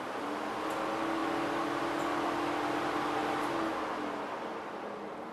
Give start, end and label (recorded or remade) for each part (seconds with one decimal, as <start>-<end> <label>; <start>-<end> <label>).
0.0-5.3 recorded